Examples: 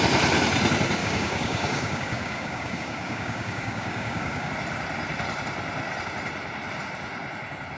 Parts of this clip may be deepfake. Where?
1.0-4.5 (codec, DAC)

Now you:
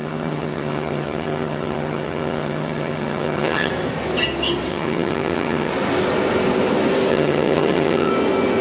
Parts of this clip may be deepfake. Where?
0.0-3.7 (vocoder, HiFi-GAN); 4.7-5.7; 7.1-8.1

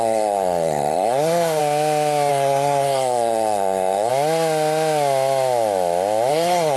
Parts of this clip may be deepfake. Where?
0.0-1.6 (codec, SNAC); 2.3-4.1; 6.3-6.8

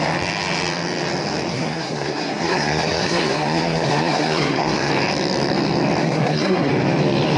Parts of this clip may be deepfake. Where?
1.5-4.9 (codec, SNAC); 6.0-6.7

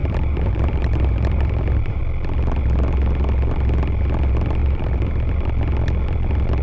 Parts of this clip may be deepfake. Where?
0.0-2.0 (vocoder, BigVGAN v2); 4.6-5.3